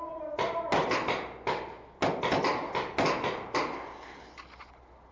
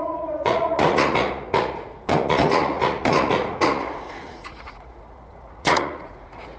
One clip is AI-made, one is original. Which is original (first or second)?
first